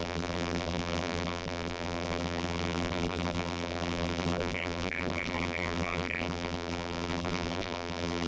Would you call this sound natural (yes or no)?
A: no